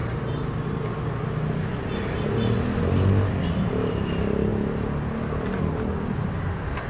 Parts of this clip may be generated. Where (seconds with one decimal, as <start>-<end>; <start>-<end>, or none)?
none